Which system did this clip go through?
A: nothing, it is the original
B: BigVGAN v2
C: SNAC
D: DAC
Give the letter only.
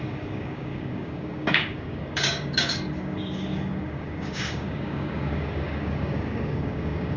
D